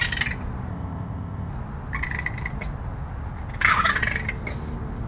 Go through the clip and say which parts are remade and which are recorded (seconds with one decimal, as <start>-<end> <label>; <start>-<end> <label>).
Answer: 0.0-0.7 recorded; 0.7-1.5 remade; 1.5-5.1 recorded